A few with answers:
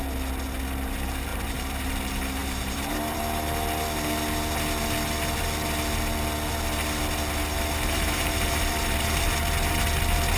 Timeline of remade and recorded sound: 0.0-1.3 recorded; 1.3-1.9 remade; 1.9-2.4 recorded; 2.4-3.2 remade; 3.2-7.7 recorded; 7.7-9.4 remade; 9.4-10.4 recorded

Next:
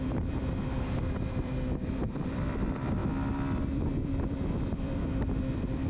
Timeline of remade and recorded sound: 0.0-3.0 remade; 3.0-4.0 recorded; 4.0-5.9 remade

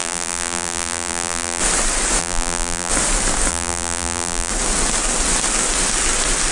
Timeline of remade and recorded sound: 0.0-1.6 remade; 1.6-2.2 recorded; 2.2-2.9 remade; 2.9-3.5 recorded; 3.5-4.5 remade; 4.5-6.5 recorded